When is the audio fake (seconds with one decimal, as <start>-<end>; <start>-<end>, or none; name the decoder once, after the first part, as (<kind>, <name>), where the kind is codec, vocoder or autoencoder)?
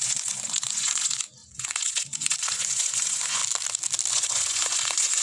0.0-3.4 (vocoder, Vocos); 4.1-5.2